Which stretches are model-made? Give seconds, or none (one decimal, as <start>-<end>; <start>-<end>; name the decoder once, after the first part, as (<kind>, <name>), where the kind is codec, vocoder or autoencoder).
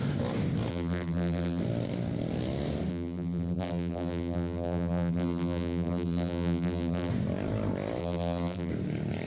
0.7-1.6 (vocoder, BigVGAN v2); 2.9-7.1; 8.0-8.7